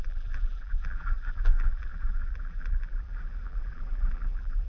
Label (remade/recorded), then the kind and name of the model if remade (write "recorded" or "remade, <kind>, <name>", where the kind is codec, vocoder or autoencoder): remade, vocoder, BigVGAN v2